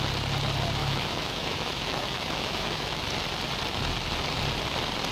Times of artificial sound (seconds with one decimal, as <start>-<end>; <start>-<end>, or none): 0.8-3.0